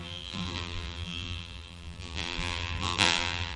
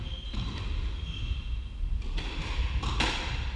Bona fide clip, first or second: second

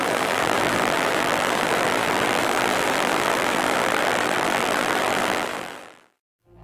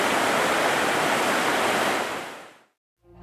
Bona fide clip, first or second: second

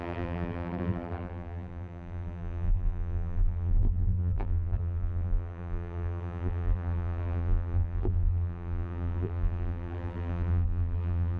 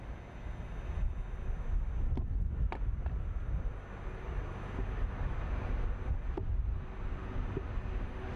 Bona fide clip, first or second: second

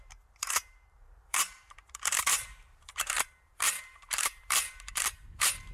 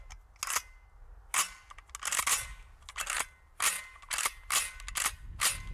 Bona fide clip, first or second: second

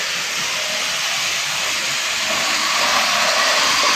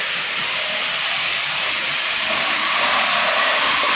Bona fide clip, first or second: first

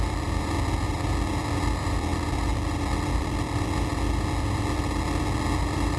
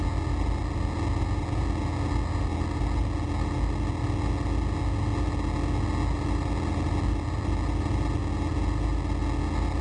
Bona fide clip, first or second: second